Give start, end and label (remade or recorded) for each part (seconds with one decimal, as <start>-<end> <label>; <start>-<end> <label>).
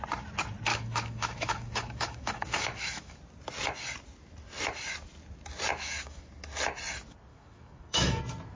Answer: 0.0-0.7 recorded; 0.7-3.2 remade; 3.2-5.7 recorded; 5.7-6.3 remade; 6.3-7.3 recorded; 7.3-8.2 remade; 8.2-8.6 recorded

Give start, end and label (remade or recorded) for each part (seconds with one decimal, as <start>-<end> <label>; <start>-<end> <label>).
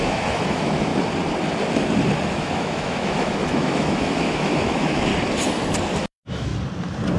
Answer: 0.0-0.9 remade; 0.9-2.3 recorded; 2.3-5.1 remade; 5.1-6.0 recorded; 6.0-6.5 remade; 6.5-7.2 recorded